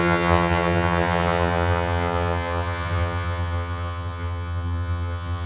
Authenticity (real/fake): fake